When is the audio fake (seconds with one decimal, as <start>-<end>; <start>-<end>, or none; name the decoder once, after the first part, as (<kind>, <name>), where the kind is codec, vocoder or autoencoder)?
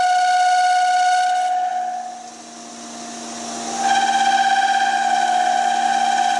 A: none